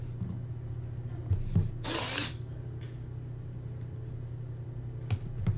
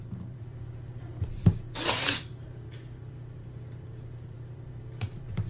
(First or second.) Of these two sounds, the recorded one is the first